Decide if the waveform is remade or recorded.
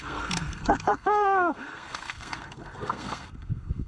remade